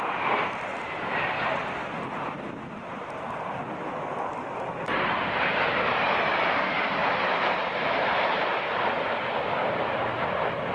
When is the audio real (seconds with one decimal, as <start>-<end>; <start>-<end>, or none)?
0.0-2.8; 3.5-7.0; 8.9-10.7